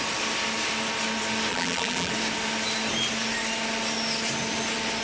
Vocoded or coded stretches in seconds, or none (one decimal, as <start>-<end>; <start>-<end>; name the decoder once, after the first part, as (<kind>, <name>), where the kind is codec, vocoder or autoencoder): 1.5-2.1 (vocoder, BigVGAN v2)